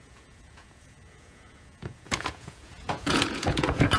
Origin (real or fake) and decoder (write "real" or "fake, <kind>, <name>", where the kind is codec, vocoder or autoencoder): fake, vocoder, Vocos